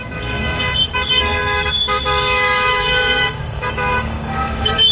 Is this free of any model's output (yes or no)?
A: no